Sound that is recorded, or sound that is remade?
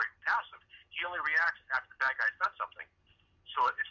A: remade